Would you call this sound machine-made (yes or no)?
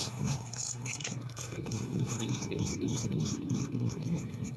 yes